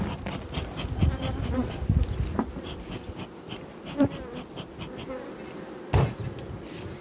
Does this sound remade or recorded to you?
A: recorded